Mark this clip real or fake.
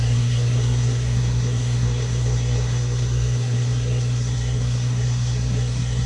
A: fake